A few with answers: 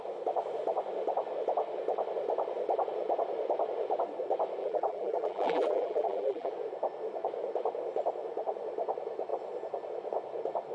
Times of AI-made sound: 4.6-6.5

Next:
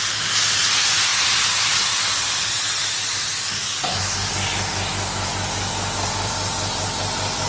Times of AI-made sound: none

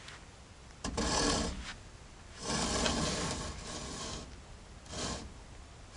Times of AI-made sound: none

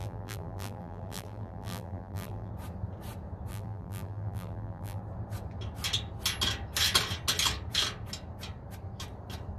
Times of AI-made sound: 0.0-2.5; 3.5-5.0

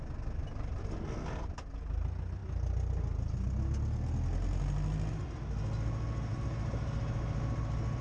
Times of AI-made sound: none

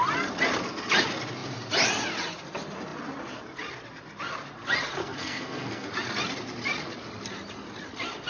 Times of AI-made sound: 5.0-5.9

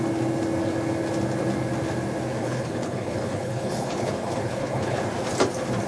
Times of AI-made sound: 2.3-5.0